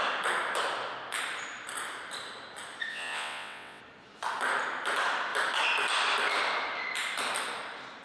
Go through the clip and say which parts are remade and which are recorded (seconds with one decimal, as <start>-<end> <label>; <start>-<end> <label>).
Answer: 0.0-2.9 recorded; 2.9-3.8 remade; 3.8-8.0 recorded